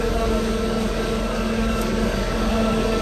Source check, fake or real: fake